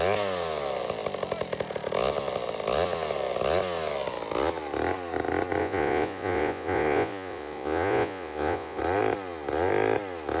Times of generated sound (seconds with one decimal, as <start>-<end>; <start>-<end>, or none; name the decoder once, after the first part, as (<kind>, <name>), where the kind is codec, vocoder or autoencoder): 5.6-8.8 (vocoder, Vocos)